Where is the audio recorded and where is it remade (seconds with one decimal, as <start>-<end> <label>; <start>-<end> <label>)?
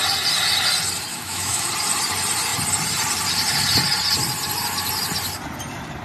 0.0-1.1 recorded; 1.1-1.7 remade; 1.7-6.0 recorded